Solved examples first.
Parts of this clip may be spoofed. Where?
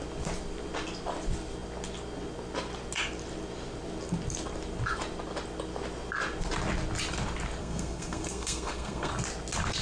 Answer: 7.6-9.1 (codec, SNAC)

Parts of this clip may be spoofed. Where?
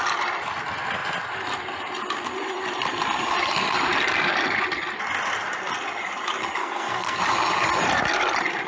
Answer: 6.6-7.2 (codec, SNAC)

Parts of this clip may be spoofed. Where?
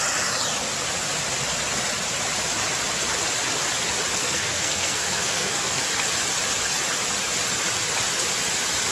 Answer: 4.2-5.8 (codec, SNAC)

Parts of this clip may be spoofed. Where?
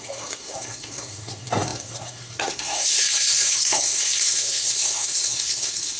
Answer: 0.0-6.0 (codec, SNAC)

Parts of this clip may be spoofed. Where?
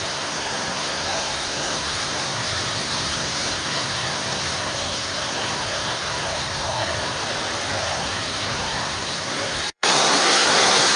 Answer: 0.0-7.2 (codec, SNAC); 7.8-11.0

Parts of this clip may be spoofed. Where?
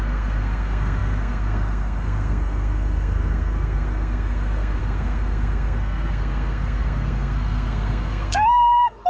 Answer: 0.0-9.1 (codec, SNAC)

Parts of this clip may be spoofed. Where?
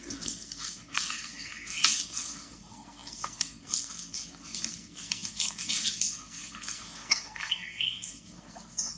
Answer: 0.0-9.0 (codec, SNAC)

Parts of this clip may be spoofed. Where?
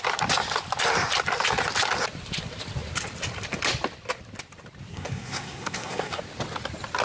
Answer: 4.9-6.2 (codec, SNAC)